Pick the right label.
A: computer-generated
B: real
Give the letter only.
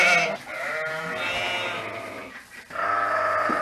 B